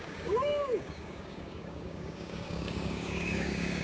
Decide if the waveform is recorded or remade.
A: remade